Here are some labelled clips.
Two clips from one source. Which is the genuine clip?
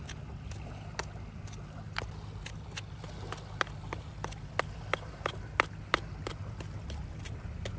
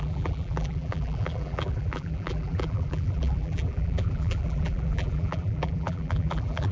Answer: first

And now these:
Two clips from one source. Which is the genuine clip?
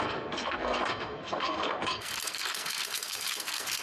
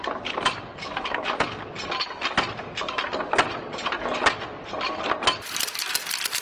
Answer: second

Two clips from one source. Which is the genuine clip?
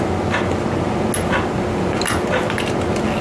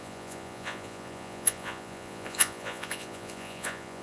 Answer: first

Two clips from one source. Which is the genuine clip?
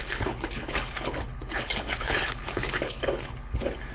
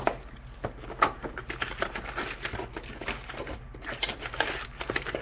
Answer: second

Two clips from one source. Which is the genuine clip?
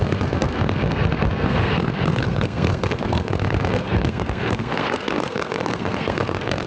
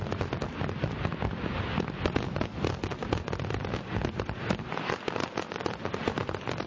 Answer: second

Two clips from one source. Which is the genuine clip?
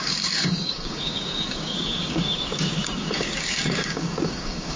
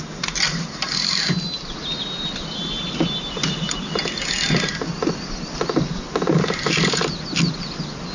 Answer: second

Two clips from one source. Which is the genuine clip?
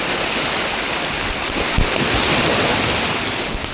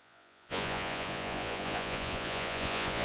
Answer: first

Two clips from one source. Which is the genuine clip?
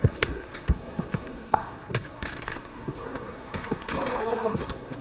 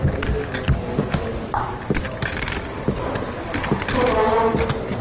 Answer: second